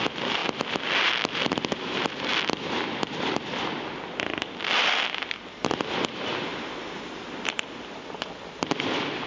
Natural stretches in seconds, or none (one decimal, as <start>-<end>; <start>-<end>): 0.0-9.3